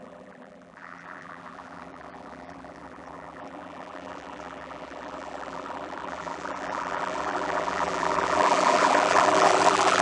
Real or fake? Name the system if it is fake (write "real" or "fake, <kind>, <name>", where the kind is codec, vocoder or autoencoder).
fake, vocoder, BigVGAN v2